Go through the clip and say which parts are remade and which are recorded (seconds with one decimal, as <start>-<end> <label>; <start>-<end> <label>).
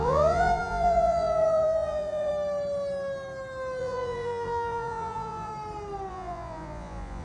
0.0-2.3 remade; 2.3-3.8 recorded; 3.8-5.5 remade; 5.5-6.1 recorded; 6.1-7.2 remade